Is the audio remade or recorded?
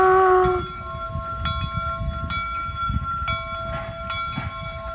recorded